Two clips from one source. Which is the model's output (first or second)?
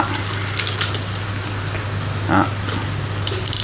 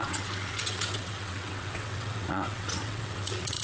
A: second